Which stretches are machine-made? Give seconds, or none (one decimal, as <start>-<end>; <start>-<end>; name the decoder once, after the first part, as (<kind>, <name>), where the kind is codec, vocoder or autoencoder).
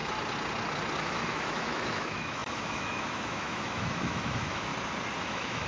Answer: 1.0-4.7 (autoencoder, DAC-VAE); 5.2-5.7